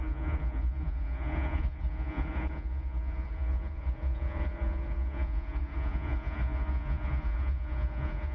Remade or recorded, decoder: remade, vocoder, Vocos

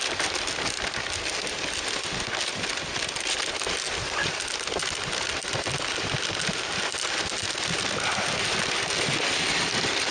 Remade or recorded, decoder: recorded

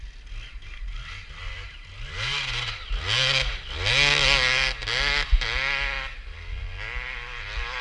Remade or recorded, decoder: recorded